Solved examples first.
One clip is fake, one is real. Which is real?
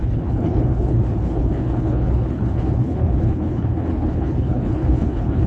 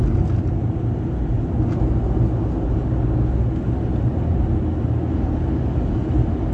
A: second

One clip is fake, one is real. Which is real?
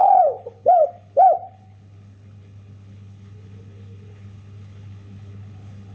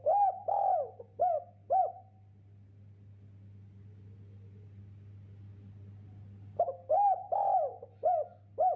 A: second